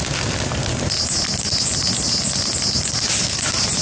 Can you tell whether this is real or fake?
real